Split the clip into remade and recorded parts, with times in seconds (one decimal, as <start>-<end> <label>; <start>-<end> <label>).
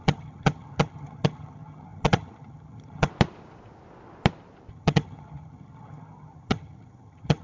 0.0-3.1 remade; 3.1-4.7 recorded; 4.7-7.4 remade